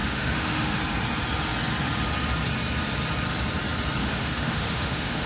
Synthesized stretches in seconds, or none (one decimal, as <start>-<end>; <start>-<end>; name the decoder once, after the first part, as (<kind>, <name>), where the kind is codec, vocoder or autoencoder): 0.0-0.8 (autoencoder, DAC-VAE); 4.0-5.3